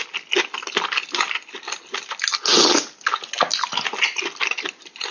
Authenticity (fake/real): real